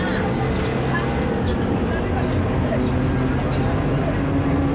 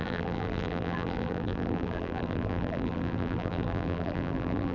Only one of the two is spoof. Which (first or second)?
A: second